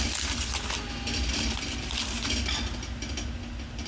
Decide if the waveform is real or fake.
real